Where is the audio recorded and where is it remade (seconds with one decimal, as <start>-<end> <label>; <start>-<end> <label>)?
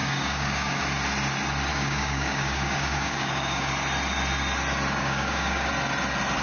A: 0.0-0.8 remade; 0.8-1.7 recorded; 1.7-3.7 remade; 3.7-5.0 recorded; 5.0-5.7 remade; 5.7-6.4 recorded